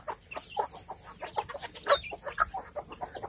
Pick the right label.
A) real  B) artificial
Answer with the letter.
A